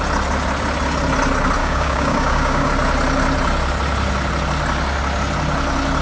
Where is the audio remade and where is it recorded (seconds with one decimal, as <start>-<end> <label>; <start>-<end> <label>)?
0.0-1.6 recorded; 1.6-2.7 remade; 2.7-6.0 recorded